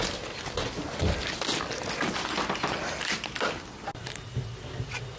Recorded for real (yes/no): yes